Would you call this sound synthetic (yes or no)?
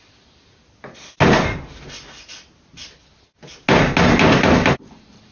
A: no